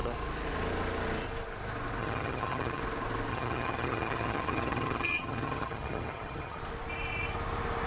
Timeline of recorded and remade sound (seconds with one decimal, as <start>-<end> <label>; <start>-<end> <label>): 0.0-2.0 recorded; 2.0-2.8 remade; 2.8-3.3 recorded; 3.3-6.6 remade; 6.6-7.9 recorded